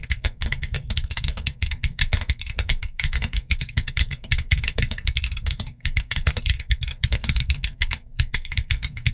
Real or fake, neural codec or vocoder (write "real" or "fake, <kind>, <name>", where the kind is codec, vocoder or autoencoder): fake, codec, SNAC